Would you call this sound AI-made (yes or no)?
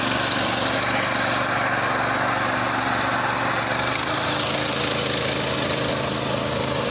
no